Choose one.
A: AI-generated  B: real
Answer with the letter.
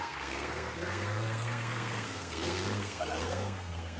A